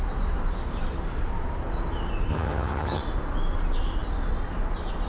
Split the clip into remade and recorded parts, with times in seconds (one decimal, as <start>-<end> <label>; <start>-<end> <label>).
0.0-2.3 recorded; 2.3-3.0 remade; 3.0-5.1 recorded